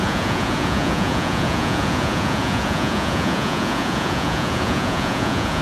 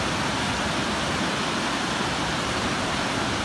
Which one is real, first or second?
second